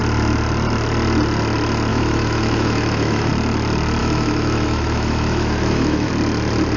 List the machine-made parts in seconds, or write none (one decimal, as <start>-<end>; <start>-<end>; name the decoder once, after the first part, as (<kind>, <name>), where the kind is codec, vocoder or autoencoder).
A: 1.9-3.3 (autoencoder, DAC-VAE); 4.0-6.1